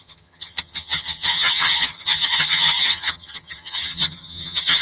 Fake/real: fake